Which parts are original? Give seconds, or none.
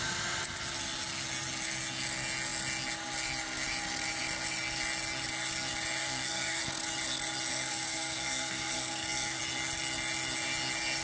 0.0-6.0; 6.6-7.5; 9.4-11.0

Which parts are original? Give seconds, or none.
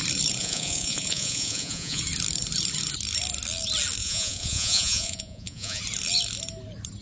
0.0-0.4; 2.0-4.0; 5.8-7.0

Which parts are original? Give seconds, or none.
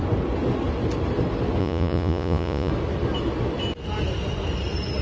0.0-1.6; 2.7-5.0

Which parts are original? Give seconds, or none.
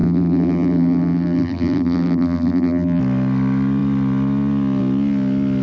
3.0-5.6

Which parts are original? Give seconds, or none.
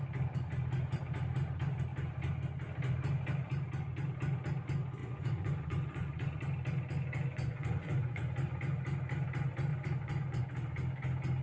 0.0-5.0; 6.4-7.3; 8.2-9.7; 10.4-11.4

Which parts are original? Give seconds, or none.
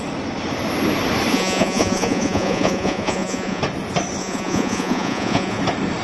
0.0-1.3; 3.6-4.2; 5.6-6.0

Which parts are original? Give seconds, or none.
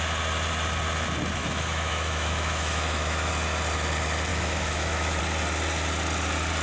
0.0-1.4; 3.3-4.3; 5.2-6.6